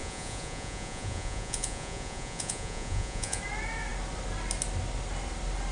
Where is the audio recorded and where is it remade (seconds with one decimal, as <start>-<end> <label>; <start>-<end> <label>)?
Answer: 0.0-3.4 remade; 3.4-5.7 recorded